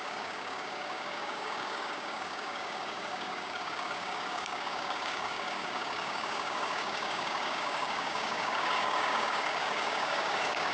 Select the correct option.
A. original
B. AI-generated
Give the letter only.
B